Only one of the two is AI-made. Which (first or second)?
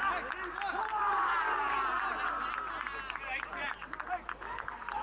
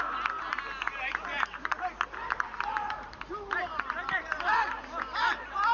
second